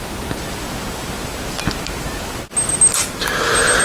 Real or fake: real